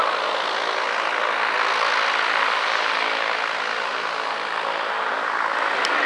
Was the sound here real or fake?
real